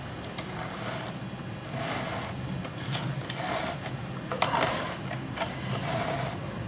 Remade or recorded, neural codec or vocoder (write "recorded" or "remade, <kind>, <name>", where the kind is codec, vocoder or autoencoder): recorded